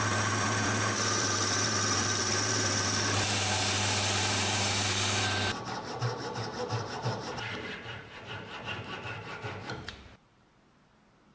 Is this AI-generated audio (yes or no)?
yes